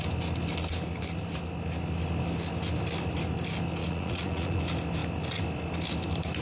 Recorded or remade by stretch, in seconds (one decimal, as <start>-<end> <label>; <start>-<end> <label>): 0.0-3.8 recorded; 3.8-4.6 remade; 4.6-6.4 recorded